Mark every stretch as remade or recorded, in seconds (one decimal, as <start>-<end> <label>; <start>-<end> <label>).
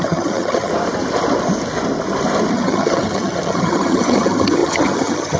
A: 0.0-0.7 remade; 0.7-2.5 recorded; 2.5-5.4 remade